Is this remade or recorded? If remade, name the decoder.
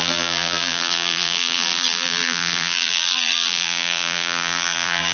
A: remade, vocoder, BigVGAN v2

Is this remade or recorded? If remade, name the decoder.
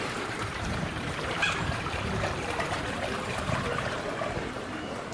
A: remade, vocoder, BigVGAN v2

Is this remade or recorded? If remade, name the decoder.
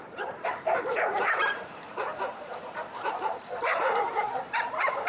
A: remade, vocoder, BigVGAN v2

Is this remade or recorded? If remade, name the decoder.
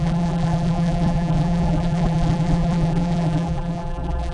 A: remade, vocoder, BigVGAN v2